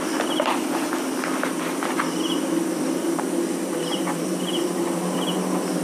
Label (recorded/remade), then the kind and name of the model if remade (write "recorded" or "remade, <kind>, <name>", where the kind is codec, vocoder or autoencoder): remade, vocoder, BigVGAN v2